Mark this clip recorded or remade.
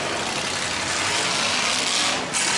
recorded